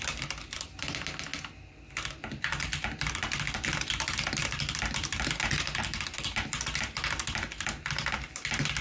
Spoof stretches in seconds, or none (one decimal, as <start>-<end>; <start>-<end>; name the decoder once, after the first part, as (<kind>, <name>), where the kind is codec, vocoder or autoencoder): 0.0-1.3 (vocoder, BigVGAN v2); 2.1-8.8